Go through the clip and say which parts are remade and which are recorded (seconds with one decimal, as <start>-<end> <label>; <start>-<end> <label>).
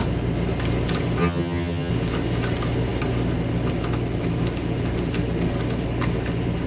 0.0-1.2 recorded; 1.2-1.9 remade; 1.9-6.7 recorded